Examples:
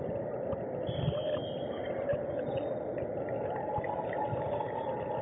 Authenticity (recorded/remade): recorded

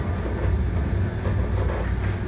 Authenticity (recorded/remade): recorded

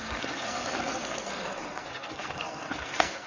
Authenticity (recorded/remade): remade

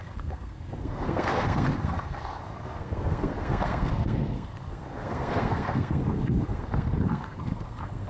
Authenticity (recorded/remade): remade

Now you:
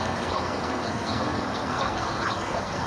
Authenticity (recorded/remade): remade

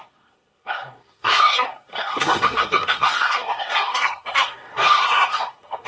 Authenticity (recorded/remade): remade